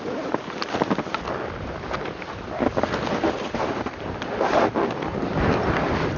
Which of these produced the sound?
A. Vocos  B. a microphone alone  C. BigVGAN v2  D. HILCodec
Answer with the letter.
B